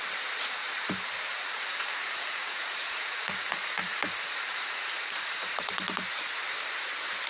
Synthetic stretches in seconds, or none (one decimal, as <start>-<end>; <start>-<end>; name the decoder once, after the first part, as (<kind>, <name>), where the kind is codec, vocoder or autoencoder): 1.3-5.7 (vocoder, Vocos)